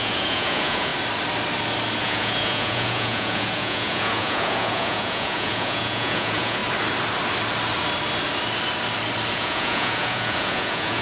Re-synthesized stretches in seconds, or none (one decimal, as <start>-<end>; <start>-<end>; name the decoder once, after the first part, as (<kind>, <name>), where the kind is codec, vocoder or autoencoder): 0.0-0.9 (vocoder, Vocos); 2.0-6.6; 9.3-11.0